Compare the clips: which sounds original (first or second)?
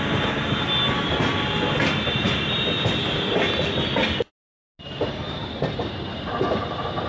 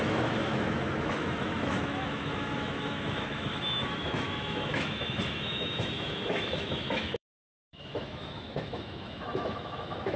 first